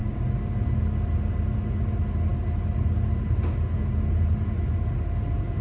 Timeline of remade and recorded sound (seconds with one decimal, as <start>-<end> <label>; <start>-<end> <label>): 0.0-5.6 recorded